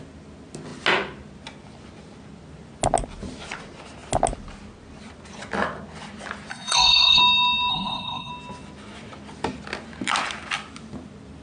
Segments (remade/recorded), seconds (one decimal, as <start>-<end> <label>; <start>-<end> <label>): 0.0-6.5 recorded; 6.5-7.2 remade; 7.2-7.7 recorded; 7.7-8.3 remade; 8.3-11.4 recorded